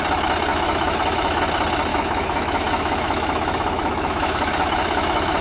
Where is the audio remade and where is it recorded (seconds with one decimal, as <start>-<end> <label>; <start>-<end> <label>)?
0.0-0.5 recorded; 0.5-1.4 remade; 1.4-1.9 recorded; 1.9-5.4 remade